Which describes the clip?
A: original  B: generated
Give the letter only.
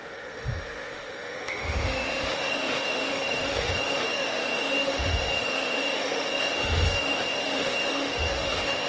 B